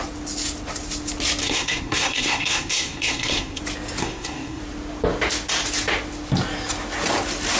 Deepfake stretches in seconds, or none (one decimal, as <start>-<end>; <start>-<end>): 1.4-3.6; 4.0-4.6